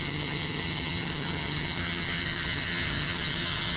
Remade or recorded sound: remade